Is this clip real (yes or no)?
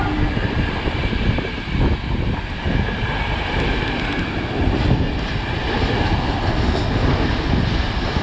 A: yes